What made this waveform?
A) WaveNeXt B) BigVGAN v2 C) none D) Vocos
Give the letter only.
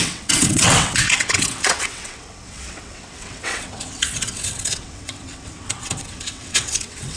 A